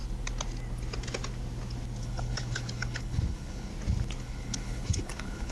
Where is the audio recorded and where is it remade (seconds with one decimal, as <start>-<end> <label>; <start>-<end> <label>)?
0.0-2.0 recorded; 2.0-3.7 remade; 3.7-4.2 recorded; 4.2-5.5 remade